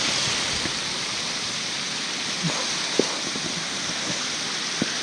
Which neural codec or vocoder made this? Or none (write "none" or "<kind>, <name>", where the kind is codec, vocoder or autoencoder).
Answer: none